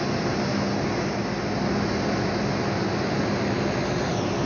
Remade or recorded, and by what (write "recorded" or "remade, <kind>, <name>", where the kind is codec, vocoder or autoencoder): recorded